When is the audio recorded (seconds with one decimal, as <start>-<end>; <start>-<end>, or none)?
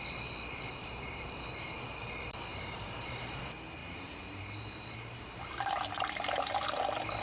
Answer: 0.0-2.5; 3.4-3.8; 6.8-7.2